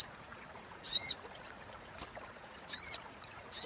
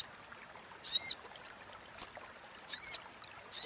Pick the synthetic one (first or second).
first